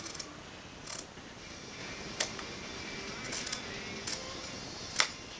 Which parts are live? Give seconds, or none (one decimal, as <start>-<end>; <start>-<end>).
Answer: 0.0-5.4